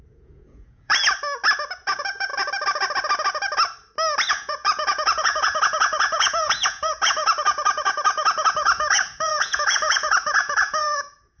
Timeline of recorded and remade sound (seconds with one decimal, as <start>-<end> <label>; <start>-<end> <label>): 0.0-0.9 remade; 0.9-1.8 recorded; 1.8-2.3 remade; 2.3-4.3 recorded; 4.3-11.4 remade